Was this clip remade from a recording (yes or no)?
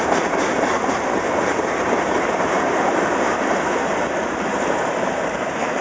yes